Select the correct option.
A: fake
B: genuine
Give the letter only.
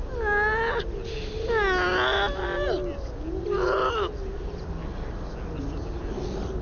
B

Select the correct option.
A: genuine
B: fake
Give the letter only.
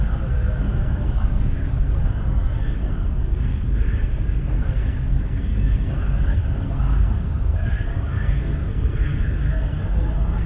B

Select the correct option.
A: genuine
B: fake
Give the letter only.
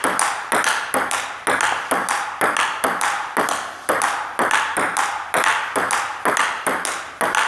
A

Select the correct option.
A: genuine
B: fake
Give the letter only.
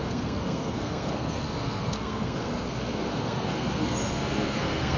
B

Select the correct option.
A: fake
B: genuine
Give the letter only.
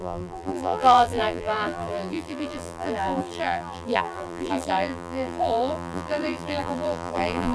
A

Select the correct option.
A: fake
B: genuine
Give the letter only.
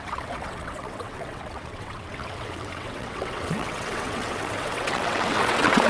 A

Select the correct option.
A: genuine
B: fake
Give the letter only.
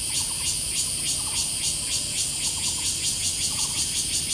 A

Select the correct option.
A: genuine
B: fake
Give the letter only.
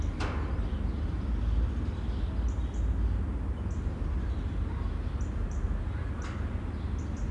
A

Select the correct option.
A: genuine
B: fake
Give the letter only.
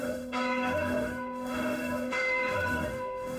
B